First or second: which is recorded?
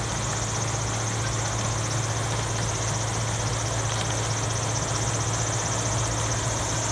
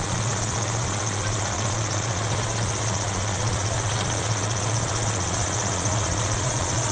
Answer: first